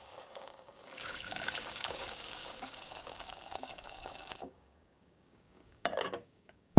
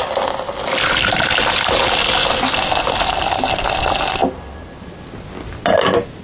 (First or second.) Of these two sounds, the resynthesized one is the first